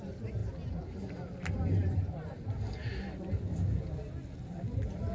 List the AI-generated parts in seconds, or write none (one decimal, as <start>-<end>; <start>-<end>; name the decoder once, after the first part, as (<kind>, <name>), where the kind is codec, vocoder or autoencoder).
none